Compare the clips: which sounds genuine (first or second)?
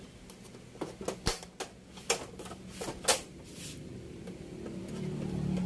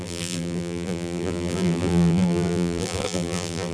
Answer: first